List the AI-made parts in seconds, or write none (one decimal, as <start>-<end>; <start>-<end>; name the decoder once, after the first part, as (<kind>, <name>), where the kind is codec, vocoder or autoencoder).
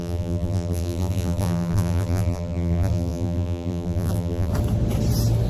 0.0-4.5 (vocoder, BigVGAN v2)